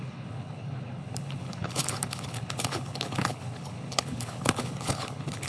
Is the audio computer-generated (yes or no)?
yes